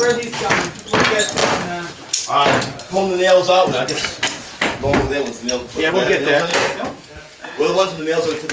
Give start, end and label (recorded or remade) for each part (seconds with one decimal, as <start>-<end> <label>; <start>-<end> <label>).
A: 0.0-6.5 recorded; 6.5-8.0 remade; 8.0-8.5 recorded